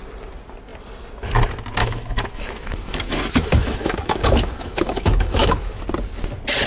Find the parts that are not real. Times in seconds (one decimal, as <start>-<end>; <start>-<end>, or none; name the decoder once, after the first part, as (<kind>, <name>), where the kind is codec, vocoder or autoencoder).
1.8-5.8 (autoencoder, DAC-VAE)